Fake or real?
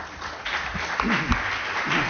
real